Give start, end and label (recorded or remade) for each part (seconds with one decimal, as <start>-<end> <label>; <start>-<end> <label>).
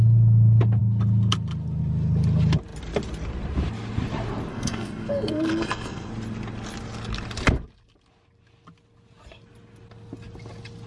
0.0-4.5 recorded; 4.5-6.1 remade; 6.1-10.9 recorded